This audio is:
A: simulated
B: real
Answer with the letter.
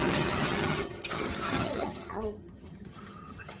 A